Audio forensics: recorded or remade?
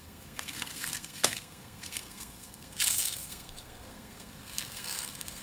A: remade